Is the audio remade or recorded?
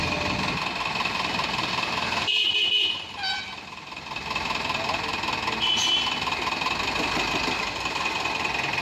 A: recorded